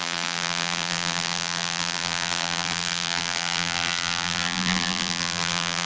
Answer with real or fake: fake